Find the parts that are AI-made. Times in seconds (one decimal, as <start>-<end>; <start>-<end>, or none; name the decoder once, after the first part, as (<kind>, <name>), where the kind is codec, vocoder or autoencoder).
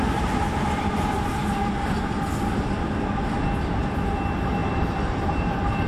4.6-5.9 (vocoder, BigVGAN v2)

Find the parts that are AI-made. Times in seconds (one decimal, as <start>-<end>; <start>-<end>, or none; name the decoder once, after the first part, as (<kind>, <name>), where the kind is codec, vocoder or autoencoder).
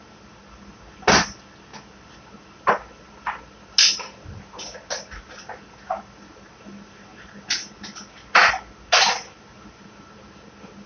none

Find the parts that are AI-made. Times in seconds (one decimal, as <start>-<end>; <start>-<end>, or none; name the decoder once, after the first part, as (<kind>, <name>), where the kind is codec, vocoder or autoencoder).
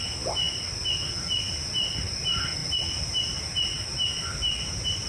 none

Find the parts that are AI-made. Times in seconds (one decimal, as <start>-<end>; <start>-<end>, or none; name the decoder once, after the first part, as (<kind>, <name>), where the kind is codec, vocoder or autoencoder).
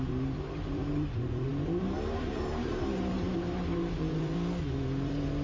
0.0-5.4 (vocoder, BigVGAN v2)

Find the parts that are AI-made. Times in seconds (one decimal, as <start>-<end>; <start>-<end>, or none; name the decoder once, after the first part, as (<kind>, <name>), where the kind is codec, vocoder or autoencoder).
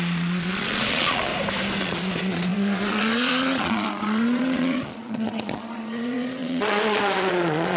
0.0-1.3 (vocoder, Vocos); 1.8-7.8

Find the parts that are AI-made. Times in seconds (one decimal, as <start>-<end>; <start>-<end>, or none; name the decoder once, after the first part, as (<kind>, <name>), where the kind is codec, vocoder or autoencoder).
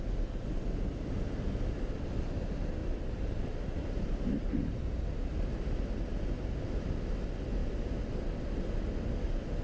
2.8-4.8 (vocoder, BigVGAN v2)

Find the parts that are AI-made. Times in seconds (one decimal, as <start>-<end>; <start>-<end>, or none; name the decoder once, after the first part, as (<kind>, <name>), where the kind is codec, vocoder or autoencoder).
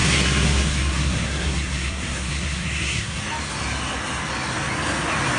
0.0-3.2 (codec, SNAC)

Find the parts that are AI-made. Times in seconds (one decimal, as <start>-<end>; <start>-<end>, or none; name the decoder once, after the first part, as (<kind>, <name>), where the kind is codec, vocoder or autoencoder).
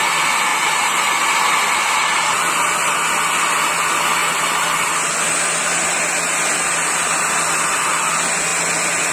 0.5-1.2 (vocoder, BigVGAN v2); 4.2-4.8